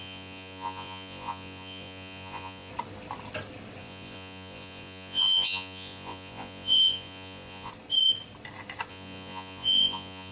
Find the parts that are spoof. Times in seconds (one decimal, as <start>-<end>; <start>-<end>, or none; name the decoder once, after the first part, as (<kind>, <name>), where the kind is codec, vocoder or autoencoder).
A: 0.0-2.7 (vocoder, Vocos); 3.8-7.7; 8.9-10.3